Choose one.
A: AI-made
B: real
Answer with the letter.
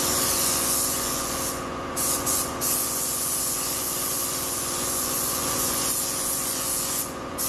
A